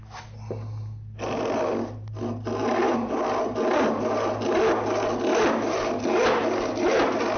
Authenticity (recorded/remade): recorded